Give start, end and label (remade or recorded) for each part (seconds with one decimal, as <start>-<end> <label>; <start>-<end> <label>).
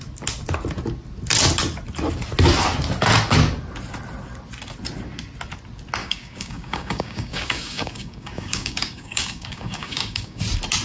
0.0-6.0 recorded; 6.0-10.4 remade; 10.4-10.8 recorded